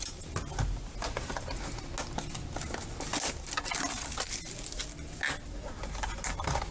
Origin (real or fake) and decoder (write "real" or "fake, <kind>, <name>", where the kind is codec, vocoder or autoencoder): real